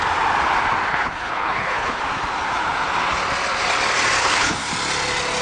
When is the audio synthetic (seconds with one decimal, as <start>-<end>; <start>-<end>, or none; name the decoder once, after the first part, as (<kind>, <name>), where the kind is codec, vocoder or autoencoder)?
0.9-2.0 (codec, HILCodec); 4.2-4.7